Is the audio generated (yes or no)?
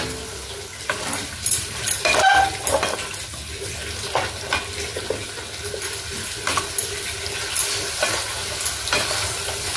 no